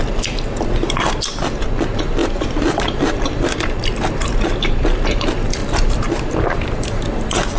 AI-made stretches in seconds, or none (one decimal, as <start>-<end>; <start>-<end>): 2.2-4.0; 5.6-7.0